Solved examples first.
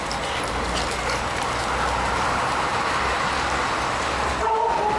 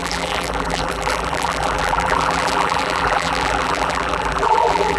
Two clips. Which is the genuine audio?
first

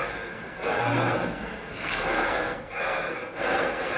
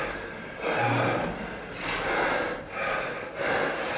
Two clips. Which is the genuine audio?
second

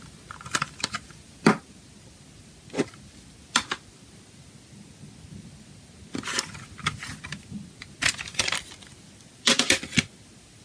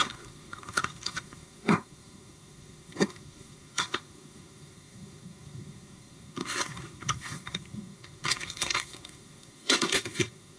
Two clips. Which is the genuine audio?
first